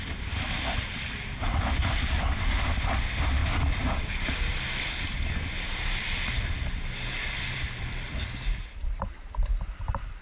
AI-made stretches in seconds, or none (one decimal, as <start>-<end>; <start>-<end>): 0.0-3.4; 4.1-10.2